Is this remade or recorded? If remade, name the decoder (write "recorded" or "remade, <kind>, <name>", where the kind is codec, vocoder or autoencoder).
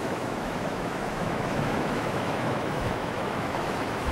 remade, autoencoder, DAC-VAE